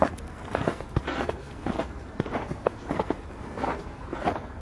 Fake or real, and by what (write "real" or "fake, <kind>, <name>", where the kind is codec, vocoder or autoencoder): fake, codec, SNAC